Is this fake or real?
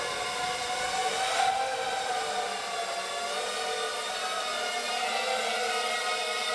real